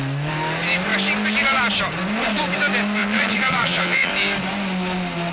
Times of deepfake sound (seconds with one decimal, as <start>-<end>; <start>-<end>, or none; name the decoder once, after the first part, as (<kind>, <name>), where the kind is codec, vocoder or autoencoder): 3.0-4.1 (vocoder, Vocos)